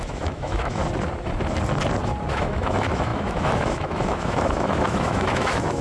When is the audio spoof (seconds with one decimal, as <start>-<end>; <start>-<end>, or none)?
0.0-0.8; 2.3-5.8